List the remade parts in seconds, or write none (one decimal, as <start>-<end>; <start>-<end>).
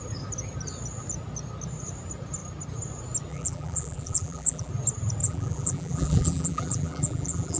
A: 3.3-4.7; 5.2-7.6